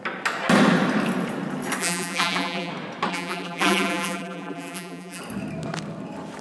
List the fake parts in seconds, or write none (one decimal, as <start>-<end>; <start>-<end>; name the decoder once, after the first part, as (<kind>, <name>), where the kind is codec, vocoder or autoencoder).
1.8-2.7 (vocoder, BigVGAN v2); 3.1-5.2